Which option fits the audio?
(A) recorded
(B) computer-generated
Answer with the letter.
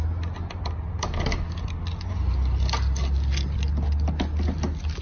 A